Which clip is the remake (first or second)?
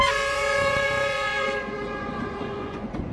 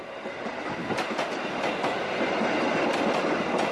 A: first